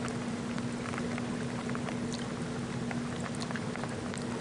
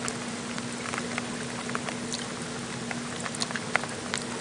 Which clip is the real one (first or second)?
second